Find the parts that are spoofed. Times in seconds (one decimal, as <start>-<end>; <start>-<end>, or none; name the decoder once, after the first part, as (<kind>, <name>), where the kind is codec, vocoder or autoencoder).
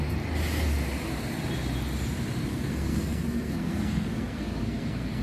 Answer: 2.5-5.2 (codec, SNAC)